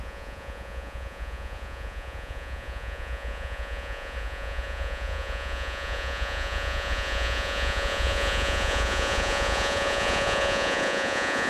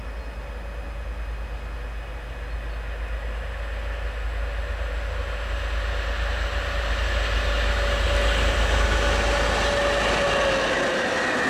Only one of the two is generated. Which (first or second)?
first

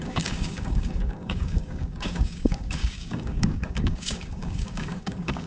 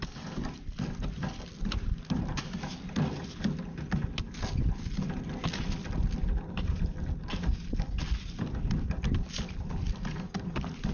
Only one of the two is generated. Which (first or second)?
first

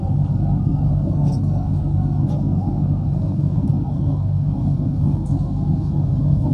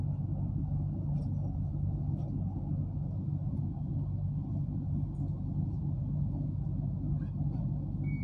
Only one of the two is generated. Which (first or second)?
first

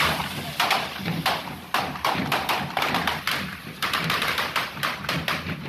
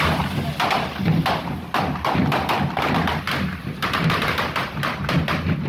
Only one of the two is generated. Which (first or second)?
first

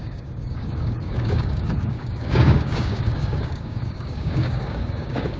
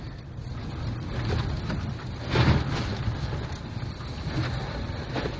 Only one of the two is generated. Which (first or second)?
first